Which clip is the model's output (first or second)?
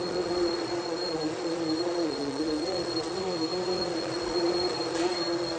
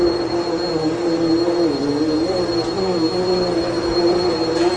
first